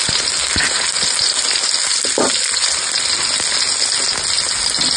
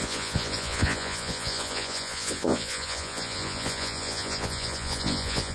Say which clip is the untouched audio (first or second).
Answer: first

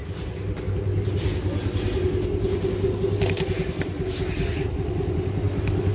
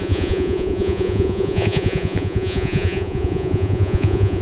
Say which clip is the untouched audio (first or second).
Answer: first